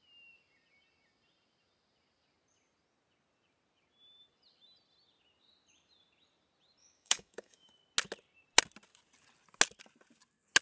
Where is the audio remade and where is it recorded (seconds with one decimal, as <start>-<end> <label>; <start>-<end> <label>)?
0.0-6.8 recorded; 6.8-7.7 remade; 7.7-10.6 recorded

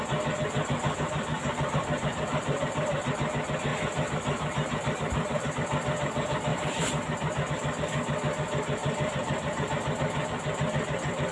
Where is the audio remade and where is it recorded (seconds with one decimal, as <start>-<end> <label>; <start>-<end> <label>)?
0.0-1.3 recorded; 1.3-3.1 remade; 3.1-3.7 recorded; 3.7-5.5 remade; 5.5-6.5 recorded; 6.5-7.5 remade; 7.5-8.8 recorded; 8.8-9.7 remade; 9.7-11.3 recorded

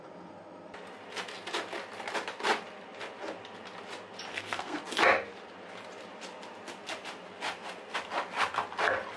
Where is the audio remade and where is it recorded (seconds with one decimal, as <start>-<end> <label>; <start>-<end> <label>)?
0.0-4.3 recorded; 4.3-4.8 remade; 4.8-9.2 recorded

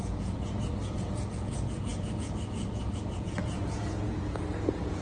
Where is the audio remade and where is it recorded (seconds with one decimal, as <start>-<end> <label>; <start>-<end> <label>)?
0.0-5.0 remade

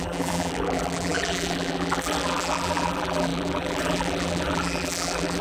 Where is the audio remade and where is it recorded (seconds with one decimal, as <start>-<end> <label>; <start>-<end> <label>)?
0.0-5.4 remade

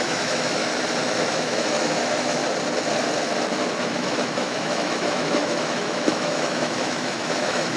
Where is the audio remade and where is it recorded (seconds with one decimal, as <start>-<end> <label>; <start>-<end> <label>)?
0.0-0.6 remade; 0.6-1.1 recorded; 1.1-2.4 remade; 2.4-3.8 recorded; 3.8-7.8 remade

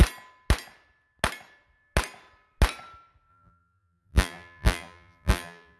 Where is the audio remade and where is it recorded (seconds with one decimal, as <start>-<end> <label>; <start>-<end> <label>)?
0.0-3.3 recorded; 3.3-5.8 remade